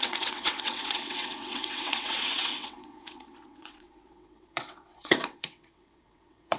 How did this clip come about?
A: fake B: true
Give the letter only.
A